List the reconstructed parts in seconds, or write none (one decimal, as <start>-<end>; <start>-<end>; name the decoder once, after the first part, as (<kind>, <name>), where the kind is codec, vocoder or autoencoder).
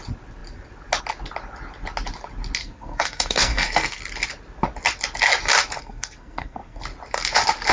2.6-4.0 (codec, SNAC); 5.8-6.8